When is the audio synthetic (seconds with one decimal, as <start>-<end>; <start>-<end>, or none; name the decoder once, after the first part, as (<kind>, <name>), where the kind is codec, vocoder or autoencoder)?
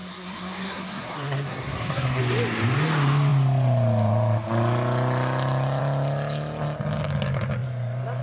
0.0-2.2 (codec, SNAC)